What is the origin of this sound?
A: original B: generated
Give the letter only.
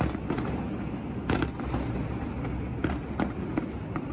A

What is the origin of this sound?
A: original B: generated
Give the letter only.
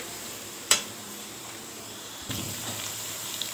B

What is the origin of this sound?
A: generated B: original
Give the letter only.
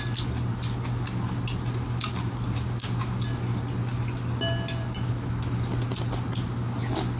B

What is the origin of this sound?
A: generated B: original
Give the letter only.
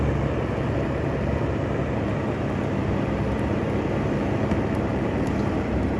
A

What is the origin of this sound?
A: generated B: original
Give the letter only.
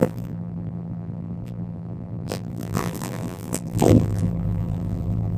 A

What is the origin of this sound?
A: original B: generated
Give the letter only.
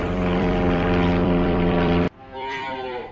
B